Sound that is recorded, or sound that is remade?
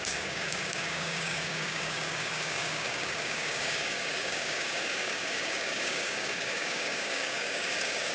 remade